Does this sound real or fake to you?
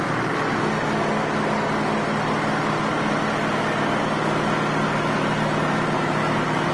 real